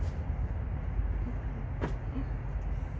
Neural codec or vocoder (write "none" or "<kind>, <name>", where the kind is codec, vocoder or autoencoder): none